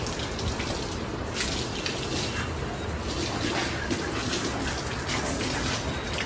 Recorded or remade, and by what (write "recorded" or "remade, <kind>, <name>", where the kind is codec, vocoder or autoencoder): recorded